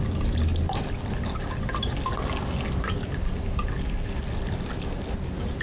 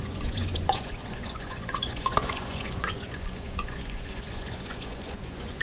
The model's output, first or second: second